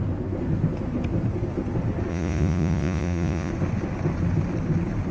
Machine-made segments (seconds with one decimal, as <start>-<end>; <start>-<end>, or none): 2.1-3.5